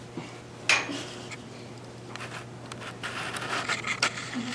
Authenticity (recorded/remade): recorded